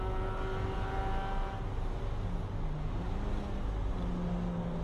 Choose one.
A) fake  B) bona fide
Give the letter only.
B